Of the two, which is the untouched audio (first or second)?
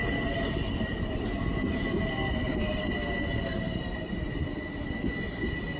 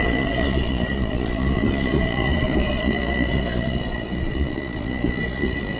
first